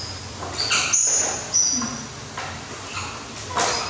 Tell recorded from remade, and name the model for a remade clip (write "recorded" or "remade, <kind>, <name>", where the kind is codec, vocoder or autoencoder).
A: recorded